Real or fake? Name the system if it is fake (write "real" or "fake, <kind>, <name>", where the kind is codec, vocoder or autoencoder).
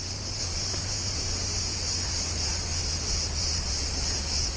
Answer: real